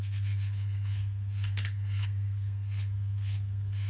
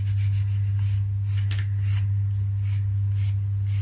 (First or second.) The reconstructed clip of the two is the first